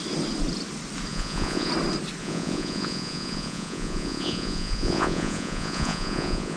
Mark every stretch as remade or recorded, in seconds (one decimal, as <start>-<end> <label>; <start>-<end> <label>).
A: 0.0-1.1 recorded; 1.1-1.7 remade; 1.7-2.2 recorded; 2.2-6.6 remade